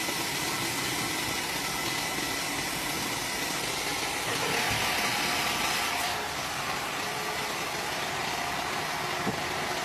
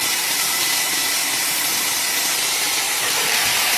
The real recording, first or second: first